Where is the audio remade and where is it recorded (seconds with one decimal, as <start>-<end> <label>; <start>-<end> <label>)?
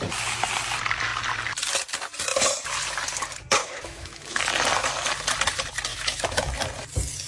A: 0.0-3.6 recorded; 3.6-4.4 remade; 4.4-5.9 recorded; 5.9-6.5 remade; 6.5-7.3 recorded